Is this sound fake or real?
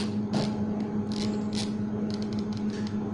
real